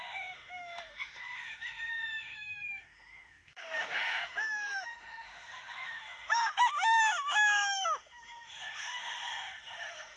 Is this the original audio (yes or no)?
no